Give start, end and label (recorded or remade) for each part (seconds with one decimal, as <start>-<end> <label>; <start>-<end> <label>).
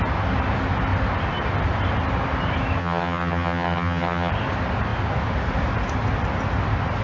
0.0-2.8 recorded; 2.8-4.3 remade; 4.3-7.0 recorded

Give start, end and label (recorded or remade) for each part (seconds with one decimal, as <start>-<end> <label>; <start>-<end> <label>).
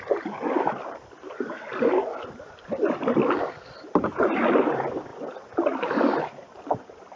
0.0-7.2 recorded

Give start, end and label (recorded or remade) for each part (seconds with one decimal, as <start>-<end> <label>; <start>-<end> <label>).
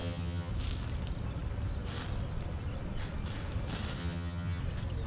0.0-0.5 remade; 0.5-4.0 recorded; 4.0-4.6 remade; 4.6-5.1 recorded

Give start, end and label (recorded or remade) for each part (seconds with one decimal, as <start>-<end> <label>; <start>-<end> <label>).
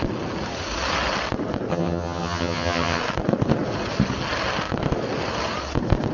0.0-1.7 recorded; 1.7-3.0 remade; 3.0-6.1 recorded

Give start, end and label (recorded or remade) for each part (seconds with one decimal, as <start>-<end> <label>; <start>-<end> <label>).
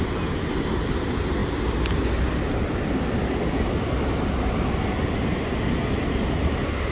0.0-6.9 recorded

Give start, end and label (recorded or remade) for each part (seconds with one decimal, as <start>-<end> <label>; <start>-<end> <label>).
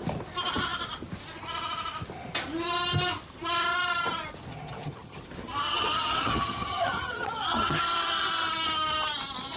0.0-4.5 recorded; 4.5-5.2 remade; 5.2-5.7 recorded; 5.7-7.8 remade; 7.8-9.6 recorded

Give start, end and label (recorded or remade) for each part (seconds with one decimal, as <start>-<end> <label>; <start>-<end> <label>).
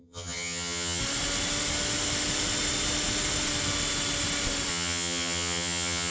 0.0-1.0 remade; 1.0-4.7 recorded; 4.7-6.1 remade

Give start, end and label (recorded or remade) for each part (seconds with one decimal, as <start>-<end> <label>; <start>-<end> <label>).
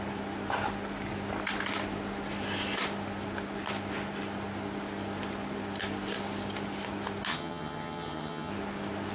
0.0-7.3 recorded; 7.3-8.5 remade; 8.5-9.1 recorded